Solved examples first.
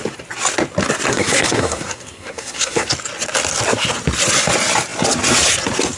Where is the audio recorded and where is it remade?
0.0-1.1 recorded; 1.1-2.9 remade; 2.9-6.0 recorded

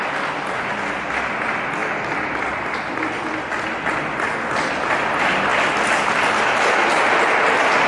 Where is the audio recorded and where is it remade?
0.0-7.9 recorded

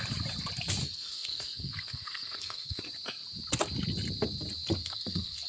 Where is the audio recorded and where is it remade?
0.0-0.8 recorded; 0.8-2.8 remade; 2.8-4.8 recorded; 4.8-5.5 remade

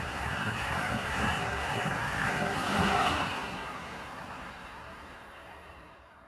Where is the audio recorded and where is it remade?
0.0-6.3 remade

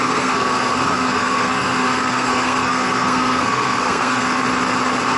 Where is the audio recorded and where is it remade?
0.0-4.4 remade; 4.4-5.2 recorded